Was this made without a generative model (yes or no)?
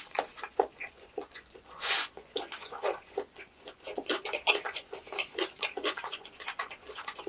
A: no